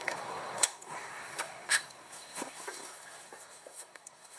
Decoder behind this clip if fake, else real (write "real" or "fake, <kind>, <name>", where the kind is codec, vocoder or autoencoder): fake, codec, SNAC